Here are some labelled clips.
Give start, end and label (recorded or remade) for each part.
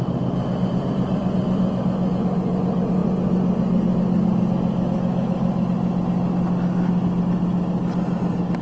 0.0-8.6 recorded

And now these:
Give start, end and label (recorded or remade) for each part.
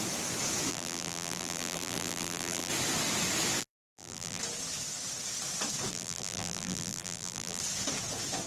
0.0-0.7 recorded; 0.7-2.7 remade; 2.7-3.6 recorded; 3.6-4.4 remade; 4.4-5.9 recorded; 5.9-7.6 remade; 7.6-8.5 recorded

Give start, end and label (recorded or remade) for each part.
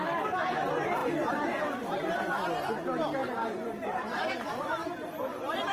0.0-3.2 recorded; 3.2-4.2 remade; 4.2-5.7 recorded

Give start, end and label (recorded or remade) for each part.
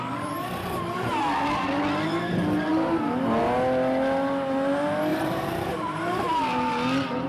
0.0-5.1 recorded; 5.1-5.7 remade; 5.7-7.3 recorded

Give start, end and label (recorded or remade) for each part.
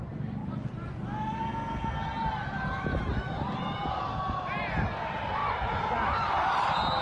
0.0-2.1 recorded; 2.1-4.1 remade; 4.1-7.0 recorded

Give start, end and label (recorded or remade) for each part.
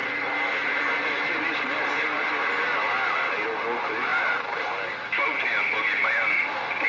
0.0-2.2 remade; 2.2-4.1 recorded; 4.1-4.6 remade; 4.6-6.9 recorded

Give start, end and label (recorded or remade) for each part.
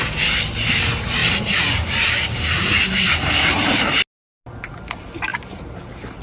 0.0-1.2 recorded; 1.2-4.0 remade; 4.0-5.3 recorded; 5.3-6.2 remade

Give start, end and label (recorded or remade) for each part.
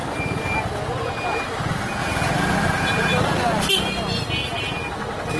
0.0-2.0 recorded; 2.0-3.7 remade; 3.7-4.4 recorded; 4.4-4.9 remade; 4.9-5.4 recorded